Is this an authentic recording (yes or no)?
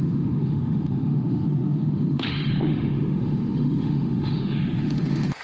no